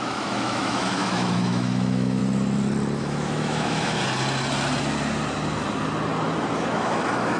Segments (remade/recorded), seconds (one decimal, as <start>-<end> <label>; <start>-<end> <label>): 0.0-2.2 remade; 2.2-3.0 recorded; 3.0-4.0 remade; 4.0-6.7 recorded; 6.7-7.4 remade